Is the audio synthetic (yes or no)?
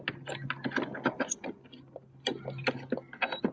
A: no